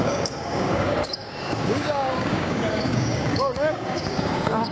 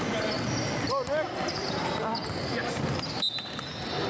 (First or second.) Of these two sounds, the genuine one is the second